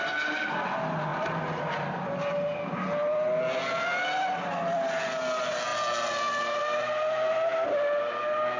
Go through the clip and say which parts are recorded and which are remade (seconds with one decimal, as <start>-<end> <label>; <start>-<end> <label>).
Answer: 0.0-8.6 recorded